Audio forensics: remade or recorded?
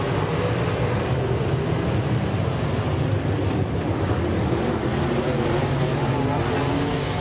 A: recorded